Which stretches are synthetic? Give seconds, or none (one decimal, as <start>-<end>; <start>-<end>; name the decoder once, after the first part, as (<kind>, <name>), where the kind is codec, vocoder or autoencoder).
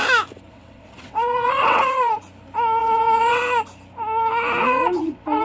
0.5-2.2 (vocoder, WaveNeXt); 2.8-3.4; 4.6-5.4